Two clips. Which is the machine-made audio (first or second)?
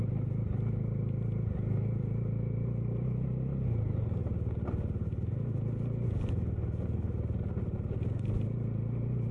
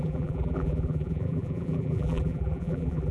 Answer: second